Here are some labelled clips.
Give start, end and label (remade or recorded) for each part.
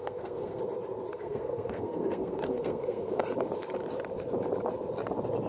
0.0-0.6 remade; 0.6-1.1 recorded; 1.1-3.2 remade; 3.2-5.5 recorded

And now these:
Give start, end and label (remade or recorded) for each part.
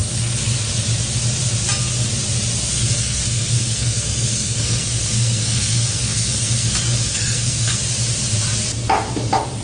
0.0-2.7 recorded; 2.7-7.8 remade; 7.8-9.6 recorded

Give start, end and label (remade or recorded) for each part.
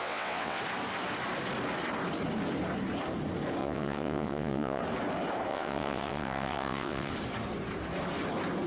0.0-0.6 remade; 0.6-3.6 recorded; 3.6-4.8 remade; 4.8-5.5 recorded; 5.5-7.1 remade; 7.1-8.7 recorded